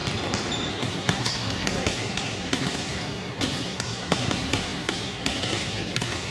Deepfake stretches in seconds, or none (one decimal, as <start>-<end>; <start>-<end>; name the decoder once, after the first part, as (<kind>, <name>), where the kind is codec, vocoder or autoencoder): 0.7-6.3 (codec, SNAC)